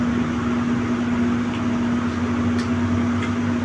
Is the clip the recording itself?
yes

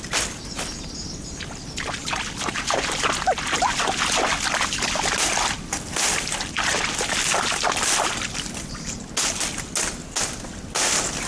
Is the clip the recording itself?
yes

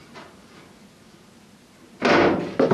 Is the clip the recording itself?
yes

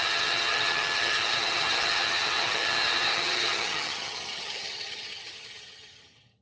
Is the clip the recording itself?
no